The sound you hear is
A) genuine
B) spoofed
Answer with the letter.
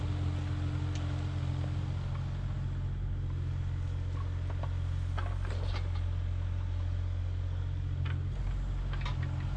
A